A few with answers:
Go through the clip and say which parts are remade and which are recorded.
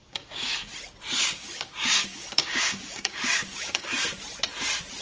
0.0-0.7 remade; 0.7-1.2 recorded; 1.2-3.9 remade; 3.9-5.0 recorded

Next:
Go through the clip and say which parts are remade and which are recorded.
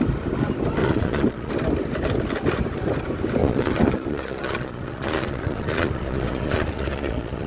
0.0-0.8 recorded; 0.8-1.5 remade; 1.5-3.4 recorded; 3.4-7.5 remade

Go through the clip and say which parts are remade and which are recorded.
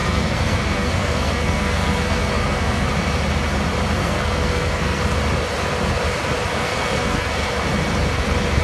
0.0-2.9 remade; 2.9-4.0 recorded; 4.0-5.0 remade; 5.0-6.5 recorded; 6.5-7.5 remade; 7.5-8.6 recorded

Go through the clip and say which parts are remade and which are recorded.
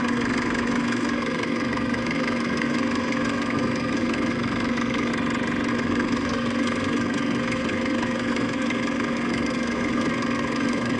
0.0-5.1 remade; 5.1-5.7 recorded; 5.7-11.0 remade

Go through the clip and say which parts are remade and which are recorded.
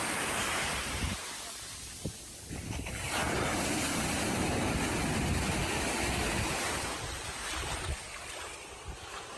0.0-3.2 remade; 3.2-7.6 recorded; 7.6-9.4 remade